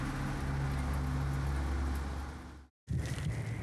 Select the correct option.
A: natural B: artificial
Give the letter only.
A